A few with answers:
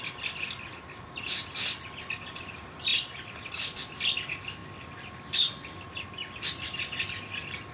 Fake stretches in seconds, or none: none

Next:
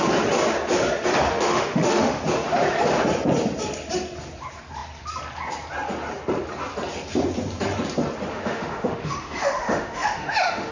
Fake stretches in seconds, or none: 1.3-2.2; 8.3-10.7

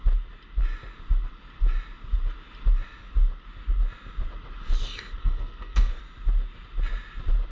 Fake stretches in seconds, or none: 5.2-6.0

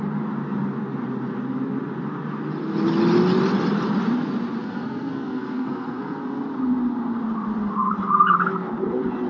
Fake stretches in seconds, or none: 4.6-6.4

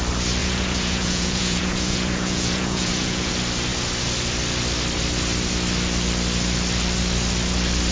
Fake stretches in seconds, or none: 0.4-3.3